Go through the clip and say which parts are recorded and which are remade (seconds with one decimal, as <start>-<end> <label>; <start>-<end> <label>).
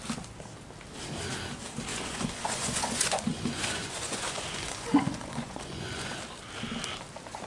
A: 0.0-1.9 recorded; 1.9-6.1 remade; 6.1-7.5 recorded